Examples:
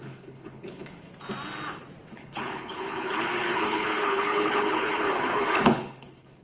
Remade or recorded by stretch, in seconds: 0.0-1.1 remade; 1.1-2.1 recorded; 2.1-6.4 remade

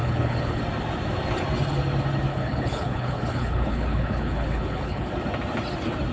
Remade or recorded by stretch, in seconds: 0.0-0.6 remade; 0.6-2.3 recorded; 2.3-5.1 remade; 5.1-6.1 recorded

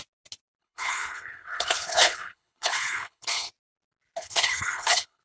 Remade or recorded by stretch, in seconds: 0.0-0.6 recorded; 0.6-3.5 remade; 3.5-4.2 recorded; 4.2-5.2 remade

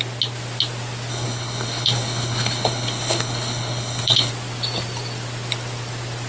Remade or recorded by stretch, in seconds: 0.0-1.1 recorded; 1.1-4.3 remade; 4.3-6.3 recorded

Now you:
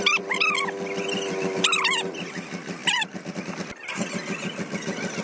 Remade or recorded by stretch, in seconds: 0.0-5.2 recorded

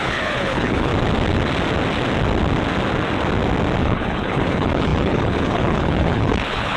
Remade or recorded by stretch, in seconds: 0.0-0.9 remade; 0.9-3.8 recorded; 3.8-6.8 remade

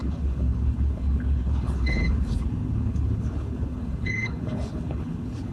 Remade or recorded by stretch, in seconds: 0.0-5.5 remade